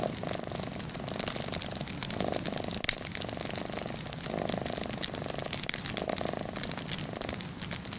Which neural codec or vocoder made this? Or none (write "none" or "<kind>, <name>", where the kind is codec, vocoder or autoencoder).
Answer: none